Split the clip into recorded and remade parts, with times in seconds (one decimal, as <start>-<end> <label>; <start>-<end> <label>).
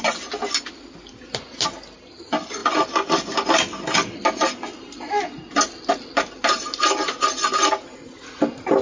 0.0-8.8 recorded